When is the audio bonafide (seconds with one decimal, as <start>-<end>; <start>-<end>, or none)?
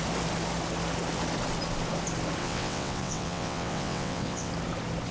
0.0-2.4; 4.5-5.1